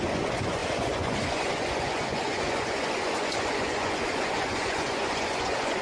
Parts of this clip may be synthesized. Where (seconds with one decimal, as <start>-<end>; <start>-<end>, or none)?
0.0-5.8